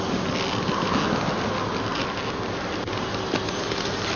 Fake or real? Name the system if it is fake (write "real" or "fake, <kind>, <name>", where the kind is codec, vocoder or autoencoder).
real